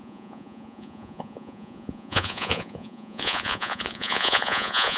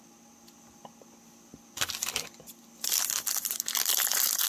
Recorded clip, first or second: second